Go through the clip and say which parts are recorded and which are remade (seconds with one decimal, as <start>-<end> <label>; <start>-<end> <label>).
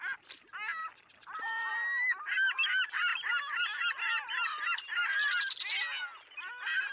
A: 0.0-6.9 recorded